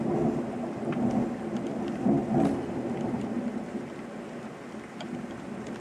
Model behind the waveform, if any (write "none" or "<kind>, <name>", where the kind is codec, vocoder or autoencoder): none